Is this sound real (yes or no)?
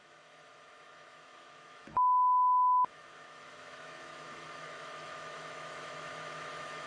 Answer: no